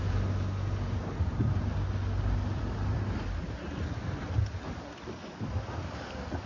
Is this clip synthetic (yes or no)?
no